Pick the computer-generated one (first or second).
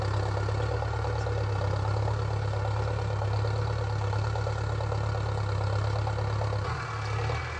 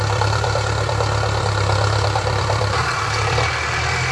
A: second